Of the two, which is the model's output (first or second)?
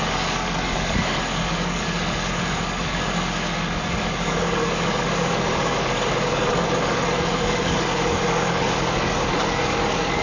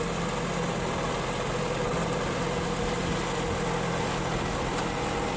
first